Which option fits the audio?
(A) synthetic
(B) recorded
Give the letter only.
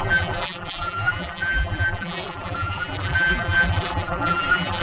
A